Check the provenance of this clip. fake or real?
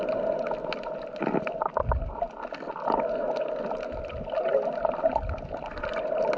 real